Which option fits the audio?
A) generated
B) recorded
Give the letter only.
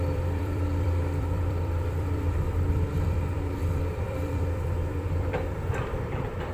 A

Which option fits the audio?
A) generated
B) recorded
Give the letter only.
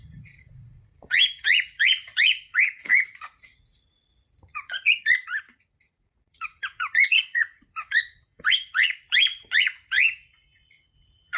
A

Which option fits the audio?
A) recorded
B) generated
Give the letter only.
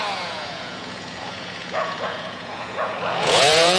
B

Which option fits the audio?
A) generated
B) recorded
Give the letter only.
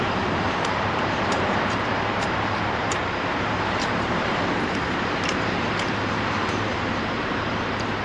A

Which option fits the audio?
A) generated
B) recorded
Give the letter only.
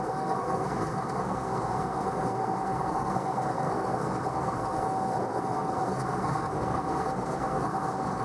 A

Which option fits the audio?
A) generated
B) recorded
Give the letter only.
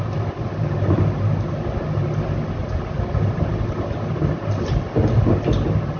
B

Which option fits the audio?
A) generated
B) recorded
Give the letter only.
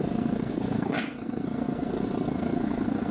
A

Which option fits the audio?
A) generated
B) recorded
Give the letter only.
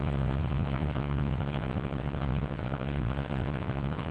A